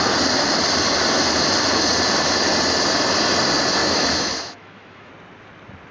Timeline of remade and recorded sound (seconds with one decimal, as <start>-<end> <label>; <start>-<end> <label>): 0.0-3.8 recorded; 3.8-5.1 remade; 5.1-5.9 recorded

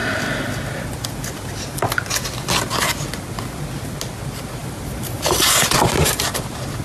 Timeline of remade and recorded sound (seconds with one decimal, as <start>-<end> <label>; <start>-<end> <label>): 0.0-4.6 recorded; 4.6-6.8 remade

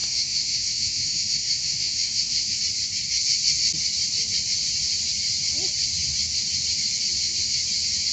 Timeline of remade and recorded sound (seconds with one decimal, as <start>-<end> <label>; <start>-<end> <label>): 0.0-2.6 remade; 2.6-8.1 recorded

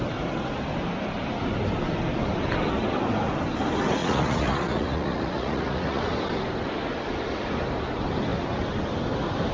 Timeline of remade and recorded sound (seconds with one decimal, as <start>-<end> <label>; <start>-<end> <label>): 0.0-4.0 recorded; 4.0-6.0 remade; 6.0-9.5 recorded